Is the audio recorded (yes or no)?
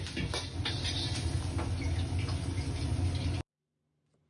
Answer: yes